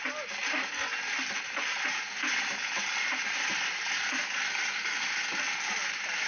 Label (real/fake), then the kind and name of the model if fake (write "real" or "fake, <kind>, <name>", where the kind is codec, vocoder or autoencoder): real